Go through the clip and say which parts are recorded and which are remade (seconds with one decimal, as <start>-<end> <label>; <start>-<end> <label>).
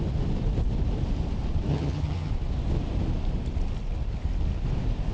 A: 0.0-1.7 recorded; 1.7-2.3 remade; 2.3-5.1 recorded